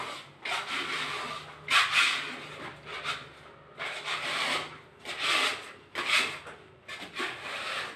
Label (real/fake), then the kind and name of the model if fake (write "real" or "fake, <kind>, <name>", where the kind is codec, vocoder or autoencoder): real